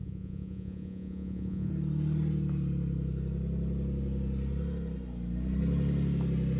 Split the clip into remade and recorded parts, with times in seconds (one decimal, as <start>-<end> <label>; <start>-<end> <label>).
0.0-1.7 remade; 1.7-6.6 recorded